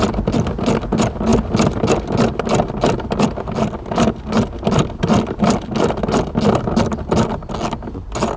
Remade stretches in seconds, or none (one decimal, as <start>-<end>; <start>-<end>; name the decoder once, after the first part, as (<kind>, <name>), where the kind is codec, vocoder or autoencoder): none

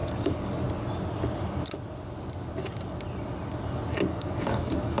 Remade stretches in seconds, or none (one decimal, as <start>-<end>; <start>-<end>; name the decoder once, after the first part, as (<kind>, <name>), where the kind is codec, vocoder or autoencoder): 0.0-0.6 (codec, DAC); 4.1-5.0